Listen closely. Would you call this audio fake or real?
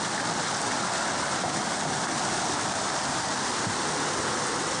real